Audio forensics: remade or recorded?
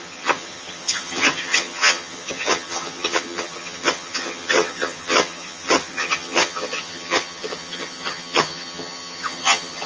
remade